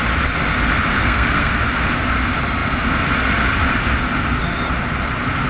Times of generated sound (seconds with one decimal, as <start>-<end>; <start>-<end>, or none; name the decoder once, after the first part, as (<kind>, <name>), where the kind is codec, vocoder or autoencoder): 0.9-1.5 (codec, SNAC)